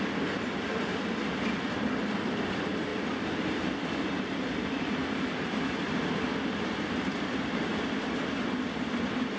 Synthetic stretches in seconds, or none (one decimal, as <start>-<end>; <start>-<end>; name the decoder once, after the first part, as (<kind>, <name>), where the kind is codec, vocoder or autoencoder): 0.0-2.9 (vocoder, BigVGAN v2); 4.1-5.0; 6.8-9.4